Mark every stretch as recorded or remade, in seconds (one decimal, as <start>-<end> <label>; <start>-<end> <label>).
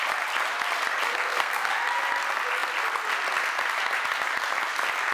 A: 0.0-1.1 recorded; 1.1-1.7 remade; 1.7-5.1 recorded